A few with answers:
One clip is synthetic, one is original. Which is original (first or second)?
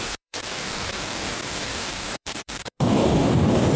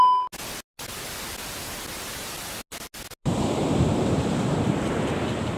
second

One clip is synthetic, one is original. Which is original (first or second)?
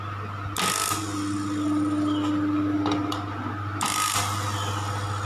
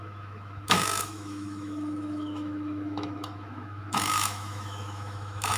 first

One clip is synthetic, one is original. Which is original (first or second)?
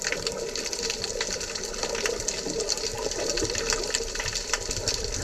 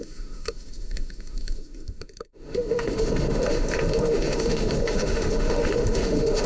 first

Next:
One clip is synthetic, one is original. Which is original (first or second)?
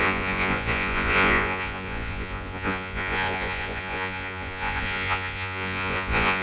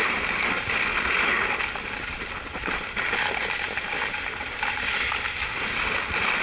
second